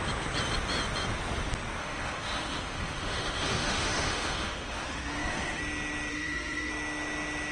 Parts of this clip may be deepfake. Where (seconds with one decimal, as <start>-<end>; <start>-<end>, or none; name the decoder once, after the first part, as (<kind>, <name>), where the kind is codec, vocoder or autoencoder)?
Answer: 1.8-5.6 (autoencoder, DAC-VAE); 6.1-6.7